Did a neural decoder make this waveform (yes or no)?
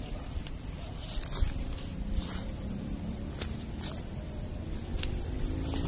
yes